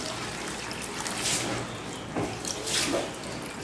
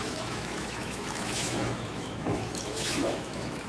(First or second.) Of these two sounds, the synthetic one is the second